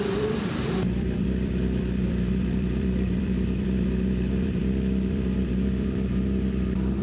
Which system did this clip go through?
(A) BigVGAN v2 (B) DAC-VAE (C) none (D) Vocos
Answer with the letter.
A